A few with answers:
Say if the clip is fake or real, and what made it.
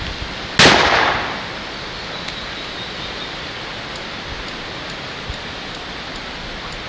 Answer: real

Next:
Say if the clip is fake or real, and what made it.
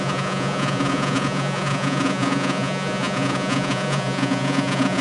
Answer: fake, vocoder, Vocos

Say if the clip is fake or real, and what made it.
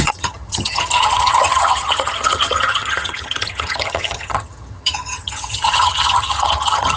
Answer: fake, vocoder, HiFi-GAN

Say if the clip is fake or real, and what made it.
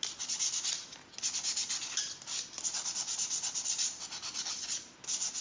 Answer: real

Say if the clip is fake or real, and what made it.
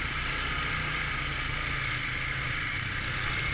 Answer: real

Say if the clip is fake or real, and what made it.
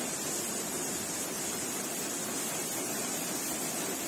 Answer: fake, vocoder, BigVGAN v2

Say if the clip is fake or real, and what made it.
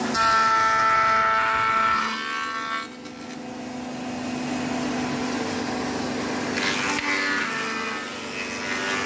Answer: real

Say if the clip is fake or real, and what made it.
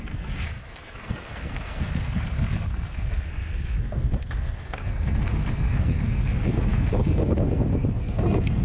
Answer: fake, codec, SNAC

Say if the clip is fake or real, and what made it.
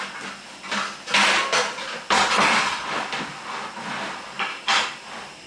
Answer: real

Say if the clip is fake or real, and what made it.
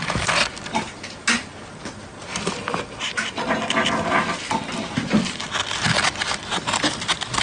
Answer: real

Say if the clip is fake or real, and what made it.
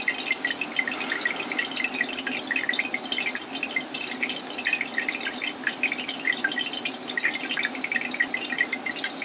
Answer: real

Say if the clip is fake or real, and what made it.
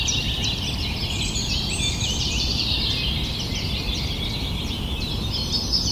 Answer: fake, vocoder, BigVGAN v2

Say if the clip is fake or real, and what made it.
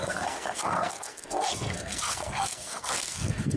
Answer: fake, codec, SNAC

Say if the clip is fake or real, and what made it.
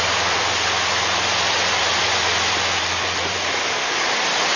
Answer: fake, vocoder, BigVGAN v2